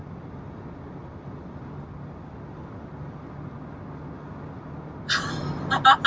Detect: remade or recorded recorded